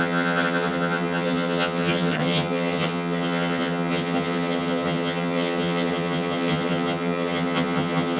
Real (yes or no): no